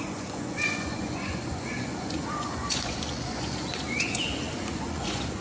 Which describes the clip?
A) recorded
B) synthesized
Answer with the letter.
B